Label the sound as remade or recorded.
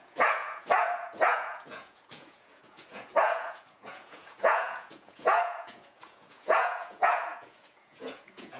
remade